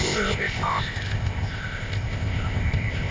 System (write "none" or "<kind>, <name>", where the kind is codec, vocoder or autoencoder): codec, ZipCodec